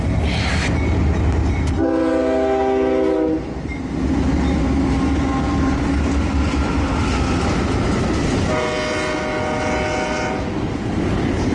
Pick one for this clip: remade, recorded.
recorded